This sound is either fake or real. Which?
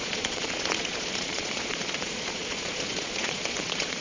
fake